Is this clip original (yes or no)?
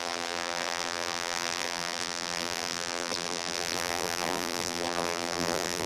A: no